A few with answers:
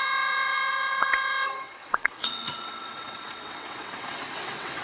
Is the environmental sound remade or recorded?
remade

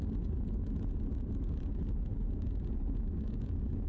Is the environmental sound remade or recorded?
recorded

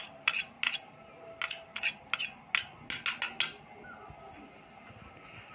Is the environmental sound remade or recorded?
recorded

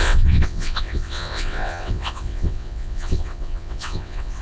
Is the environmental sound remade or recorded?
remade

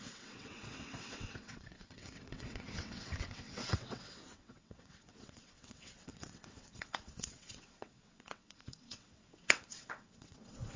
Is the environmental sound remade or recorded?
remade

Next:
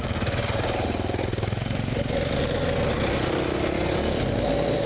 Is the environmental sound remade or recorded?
recorded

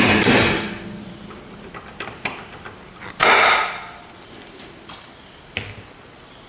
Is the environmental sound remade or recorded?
recorded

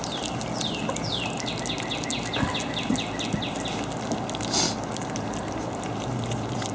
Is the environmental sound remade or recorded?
recorded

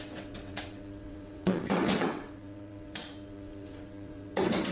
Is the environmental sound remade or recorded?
remade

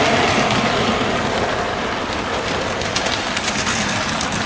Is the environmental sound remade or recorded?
recorded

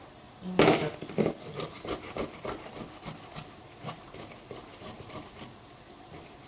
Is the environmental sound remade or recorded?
recorded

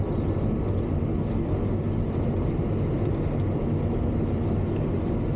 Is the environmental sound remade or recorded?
recorded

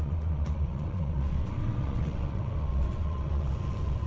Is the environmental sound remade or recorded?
remade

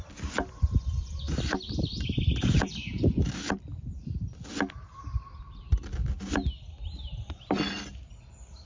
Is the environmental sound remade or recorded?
recorded